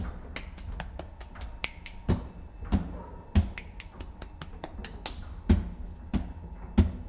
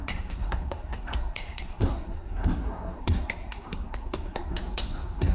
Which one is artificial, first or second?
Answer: second